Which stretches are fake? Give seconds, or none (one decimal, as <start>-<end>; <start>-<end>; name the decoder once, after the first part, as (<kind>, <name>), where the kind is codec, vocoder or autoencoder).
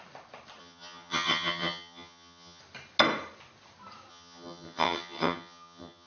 0.6-2.6 (vocoder, HiFi-GAN); 4.1-6.1